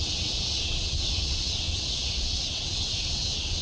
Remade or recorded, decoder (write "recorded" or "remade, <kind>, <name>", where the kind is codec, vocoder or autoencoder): remade, vocoder, WaveNeXt